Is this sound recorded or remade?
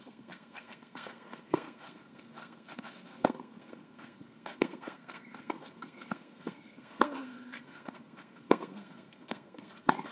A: remade